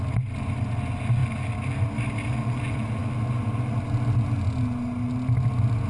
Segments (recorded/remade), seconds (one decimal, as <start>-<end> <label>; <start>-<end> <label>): 0.0-5.9 recorded